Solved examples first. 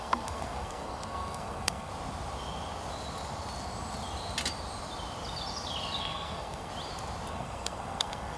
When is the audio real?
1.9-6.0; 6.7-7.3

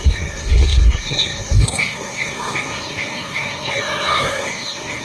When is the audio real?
none

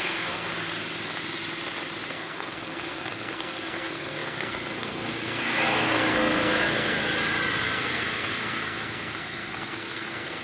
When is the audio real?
0.5-2.1; 7.0-7.6

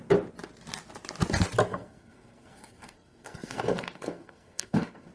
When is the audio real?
0.0-1.7

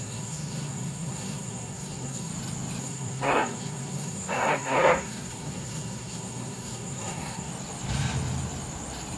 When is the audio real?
2.3-2.8; 7.5-9.2